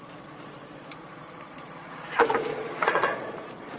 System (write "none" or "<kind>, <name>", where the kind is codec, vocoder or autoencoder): vocoder, Vocos